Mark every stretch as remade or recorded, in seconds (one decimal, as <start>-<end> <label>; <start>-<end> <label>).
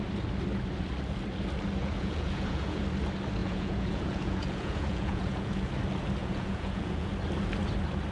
0.0-1.8 recorded; 1.8-2.8 remade; 2.8-3.4 recorded; 3.4-5.7 remade; 5.7-6.2 recorded; 6.2-7.1 remade; 7.1-8.1 recorded